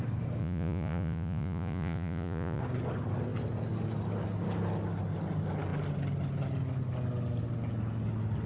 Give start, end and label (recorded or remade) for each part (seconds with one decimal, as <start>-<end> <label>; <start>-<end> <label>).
0.0-0.4 recorded; 0.4-2.6 remade; 2.6-8.5 recorded